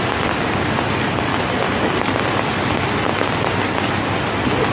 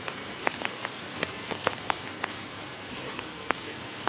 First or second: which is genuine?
first